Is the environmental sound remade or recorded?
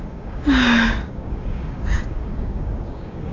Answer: remade